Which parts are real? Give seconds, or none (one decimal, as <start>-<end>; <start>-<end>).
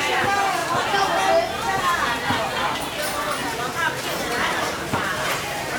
0.6-1.8; 3.4-5.8